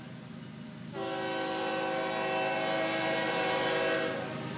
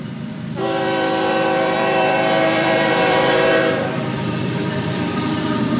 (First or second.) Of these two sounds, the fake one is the second